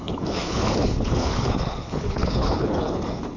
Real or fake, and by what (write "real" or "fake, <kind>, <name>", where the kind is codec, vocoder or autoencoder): fake, codec, HILCodec